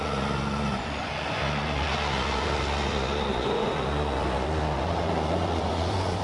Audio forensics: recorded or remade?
remade